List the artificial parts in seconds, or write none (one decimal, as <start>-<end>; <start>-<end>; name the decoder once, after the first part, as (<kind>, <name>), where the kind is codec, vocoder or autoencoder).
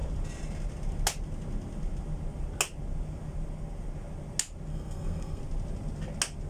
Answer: 4.7-5.4 (codec, SNAC)